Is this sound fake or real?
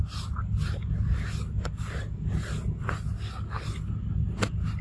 real